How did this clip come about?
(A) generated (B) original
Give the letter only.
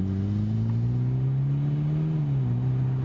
B